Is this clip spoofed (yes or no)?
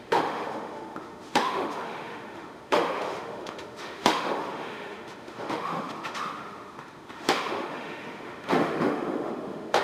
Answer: yes